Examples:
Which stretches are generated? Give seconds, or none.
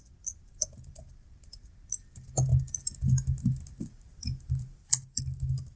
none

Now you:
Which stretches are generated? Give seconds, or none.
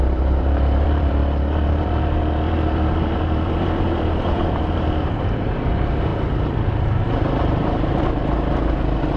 0.0-1.2 (vocoder, BigVGAN v2); 1.7-9.2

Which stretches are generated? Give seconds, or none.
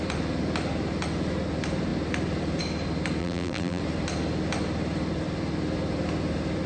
3.2-3.8 (vocoder, BigVGAN v2)